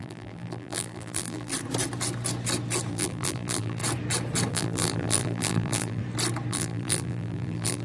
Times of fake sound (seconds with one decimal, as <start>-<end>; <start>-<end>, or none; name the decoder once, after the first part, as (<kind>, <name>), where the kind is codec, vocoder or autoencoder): 0.0-1.5 (vocoder, BigVGAN v2); 2.9-3.8; 4.5-6.0; 6.5-7.8